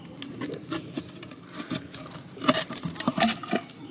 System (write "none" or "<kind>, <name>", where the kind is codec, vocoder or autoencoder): none